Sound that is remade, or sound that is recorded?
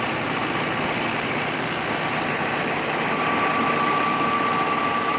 recorded